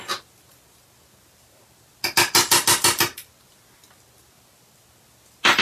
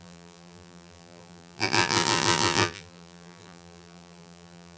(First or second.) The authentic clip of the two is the first